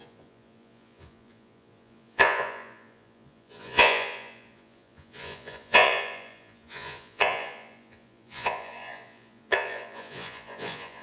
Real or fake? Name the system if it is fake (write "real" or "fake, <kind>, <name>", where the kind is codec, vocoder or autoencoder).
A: fake, vocoder, Vocos